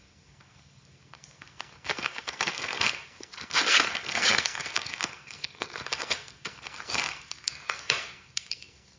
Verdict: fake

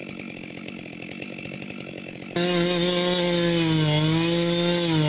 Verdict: real